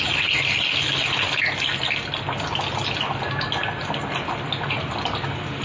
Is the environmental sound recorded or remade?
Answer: recorded